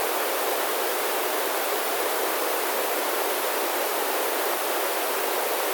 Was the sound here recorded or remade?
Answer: remade